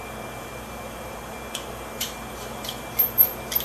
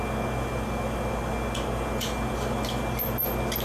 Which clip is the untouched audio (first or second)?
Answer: second